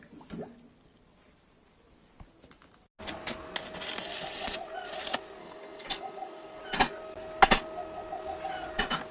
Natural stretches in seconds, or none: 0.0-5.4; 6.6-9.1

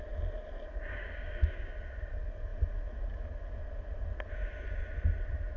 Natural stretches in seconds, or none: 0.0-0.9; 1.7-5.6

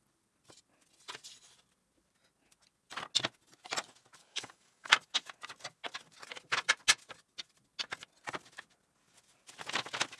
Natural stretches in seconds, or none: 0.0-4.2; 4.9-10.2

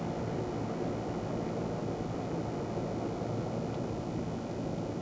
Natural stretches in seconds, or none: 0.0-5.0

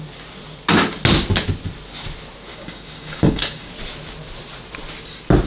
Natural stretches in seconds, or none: 0.0-2.5; 3.7-5.5